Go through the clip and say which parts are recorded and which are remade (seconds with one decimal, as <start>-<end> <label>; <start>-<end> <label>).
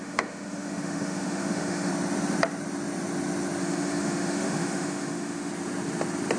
0.0-1.9 remade; 1.9-3.6 recorded; 3.6-5.5 remade; 5.5-6.4 recorded